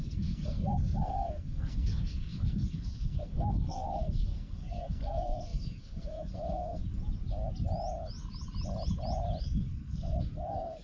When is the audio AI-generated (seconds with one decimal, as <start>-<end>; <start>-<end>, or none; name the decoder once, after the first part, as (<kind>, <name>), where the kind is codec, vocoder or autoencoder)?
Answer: 0.0-6.8 (codec, SNAC); 9.4-10.8

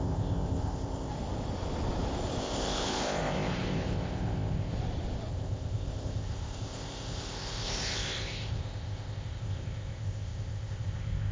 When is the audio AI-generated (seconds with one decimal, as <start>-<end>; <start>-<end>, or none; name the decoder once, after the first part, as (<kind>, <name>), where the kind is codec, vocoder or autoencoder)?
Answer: 0.0-1.1 (codec, ZipCodec); 2.4-4.7; 5.3-11.3

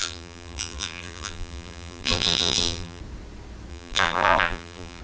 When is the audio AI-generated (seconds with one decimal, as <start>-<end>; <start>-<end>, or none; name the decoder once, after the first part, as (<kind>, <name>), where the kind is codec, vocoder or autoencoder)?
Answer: 0.0-3.0 (vocoder, BigVGAN v2); 3.7-5.0

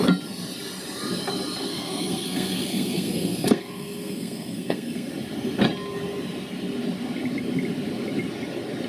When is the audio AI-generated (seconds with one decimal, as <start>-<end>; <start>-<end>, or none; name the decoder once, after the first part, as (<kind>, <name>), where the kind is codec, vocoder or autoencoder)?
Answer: 1.7-5.1 (codec, SNAC)